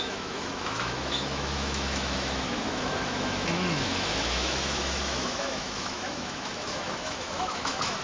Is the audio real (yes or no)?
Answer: no